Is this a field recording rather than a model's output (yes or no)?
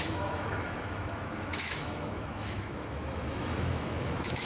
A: no